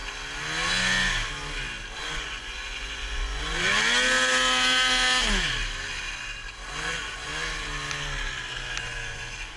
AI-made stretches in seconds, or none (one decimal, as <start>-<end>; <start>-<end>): 2.0-3.7; 6.7-7.3; 8.8-9.6